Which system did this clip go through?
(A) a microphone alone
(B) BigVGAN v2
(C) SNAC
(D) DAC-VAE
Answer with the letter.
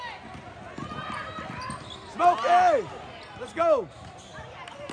A